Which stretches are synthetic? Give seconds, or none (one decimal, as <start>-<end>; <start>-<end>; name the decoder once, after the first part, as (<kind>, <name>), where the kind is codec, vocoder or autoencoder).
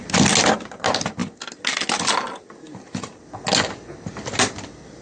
none